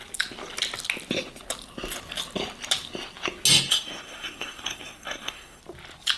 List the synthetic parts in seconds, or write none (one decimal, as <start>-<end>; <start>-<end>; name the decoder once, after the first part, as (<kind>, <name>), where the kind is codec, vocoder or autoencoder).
3.7-5.6 (codec, SNAC)